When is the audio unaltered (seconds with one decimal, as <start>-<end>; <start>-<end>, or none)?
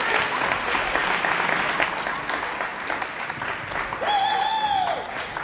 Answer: 0.0-2.7; 4.3-5.4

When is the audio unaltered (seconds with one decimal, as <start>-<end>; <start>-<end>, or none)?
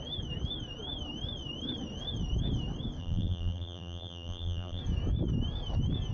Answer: 0.0-3.0; 4.8-6.1